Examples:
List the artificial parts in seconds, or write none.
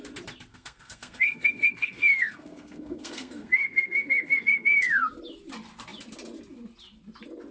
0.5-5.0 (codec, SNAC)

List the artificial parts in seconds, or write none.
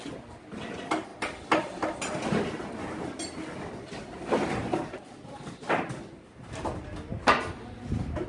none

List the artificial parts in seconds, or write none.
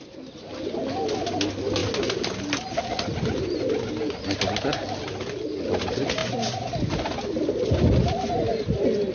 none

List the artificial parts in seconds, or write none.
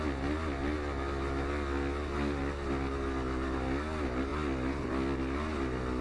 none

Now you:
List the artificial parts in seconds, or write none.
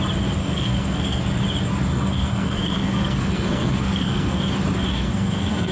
0.4-1.2 (codec, SNAC); 1.9-4.4; 4.9-5.7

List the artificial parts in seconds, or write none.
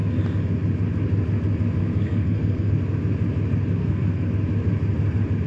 1.8-2.7 (codec, SNAC); 3.8-4.3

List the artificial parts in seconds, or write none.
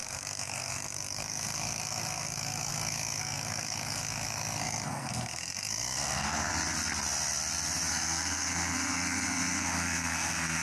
0.0-6.5 (codec, SNAC); 7.9-10.6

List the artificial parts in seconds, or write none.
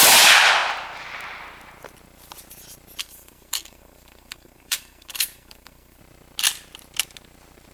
3.0-6.0 (codec, SNAC)